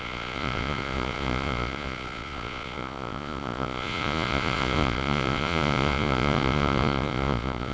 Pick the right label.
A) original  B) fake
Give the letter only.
B